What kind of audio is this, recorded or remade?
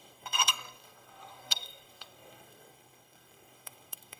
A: remade